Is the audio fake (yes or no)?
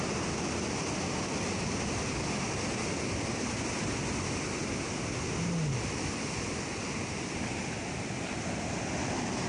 no